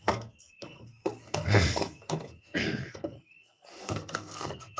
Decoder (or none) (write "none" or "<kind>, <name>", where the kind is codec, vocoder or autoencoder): codec, SNAC